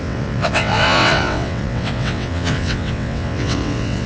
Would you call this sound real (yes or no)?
no